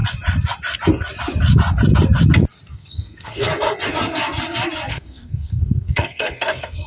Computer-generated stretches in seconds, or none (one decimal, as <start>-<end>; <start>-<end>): 2.7-3.5; 4.9-6.9